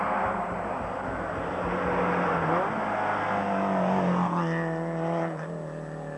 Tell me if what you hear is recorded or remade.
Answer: recorded